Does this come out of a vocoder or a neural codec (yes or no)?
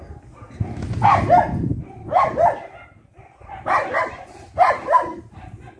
no